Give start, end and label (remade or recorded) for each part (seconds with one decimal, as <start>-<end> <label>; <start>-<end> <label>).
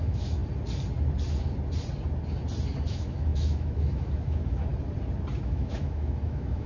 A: 0.0-0.4 remade; 0.4-2.9 recorded; 2.9-4.7 remade; 4.7-5.4 recorded; 5.4-6.7 remade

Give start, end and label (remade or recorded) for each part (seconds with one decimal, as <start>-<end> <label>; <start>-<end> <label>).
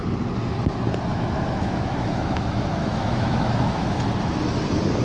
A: 0.0-1.1 recorded; 1.1-4.0 remade; 4.0-5.0 recorded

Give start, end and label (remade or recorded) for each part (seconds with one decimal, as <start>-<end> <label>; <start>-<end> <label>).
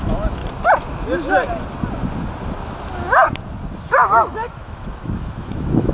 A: 0.0-0.4 remade; 0.4-3.9 recorded; 3.9-5.9 remade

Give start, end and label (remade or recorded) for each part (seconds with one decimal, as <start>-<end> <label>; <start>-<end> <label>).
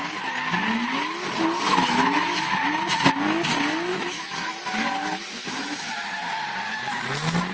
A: 0.0-1.7 recorded; 1.7-2.6 remade; 2.6-3.9 recorded; 3.9-4.6 remade; 4.6-5.2 recorded; 5.2-6.2 remade; 6.2-7.5 recorded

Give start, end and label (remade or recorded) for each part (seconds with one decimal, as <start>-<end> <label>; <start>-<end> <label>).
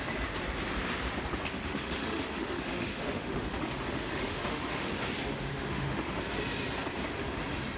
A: 0.0-1.5 recorded; 1.5-4.9 remade; 4.9-5.5 recorded; 5.5-6.2 remade; 6.2-7.8 recorded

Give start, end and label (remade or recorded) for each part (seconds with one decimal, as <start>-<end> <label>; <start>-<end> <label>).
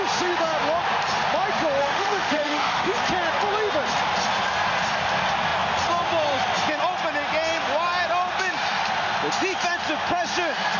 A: 0.0-1.8 recorded; 1.8-2.9 remade; 2.9-10.8 recorded